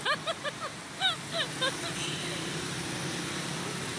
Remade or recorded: recorded